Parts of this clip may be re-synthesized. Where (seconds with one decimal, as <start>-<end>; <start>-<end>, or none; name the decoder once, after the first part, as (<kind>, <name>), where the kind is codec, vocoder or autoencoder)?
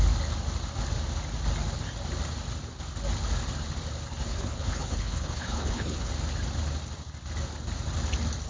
4.3-6.1 (codec, HILCodec)